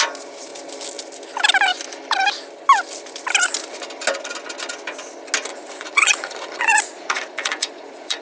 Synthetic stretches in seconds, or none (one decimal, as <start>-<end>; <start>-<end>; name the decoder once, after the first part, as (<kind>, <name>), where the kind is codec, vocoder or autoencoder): 5.5-8.2 (vocoder, Vocos)